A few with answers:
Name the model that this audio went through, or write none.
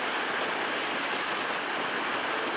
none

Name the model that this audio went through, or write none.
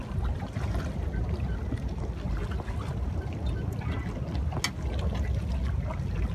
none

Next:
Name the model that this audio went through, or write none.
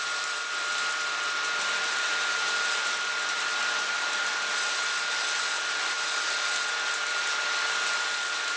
vocoder, BigVGAN v2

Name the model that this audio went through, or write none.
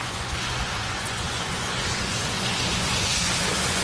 vocoder, Vocos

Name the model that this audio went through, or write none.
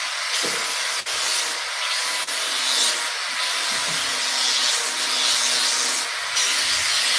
none